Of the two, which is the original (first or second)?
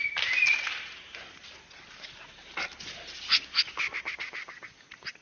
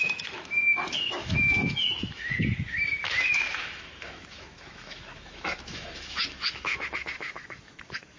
first